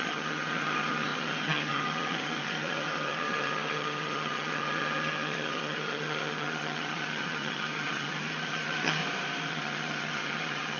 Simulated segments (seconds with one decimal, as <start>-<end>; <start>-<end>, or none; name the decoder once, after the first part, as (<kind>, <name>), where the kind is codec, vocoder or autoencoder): 0.0-9.0 (vocoder, HiFi-GAN); 9.5-10.8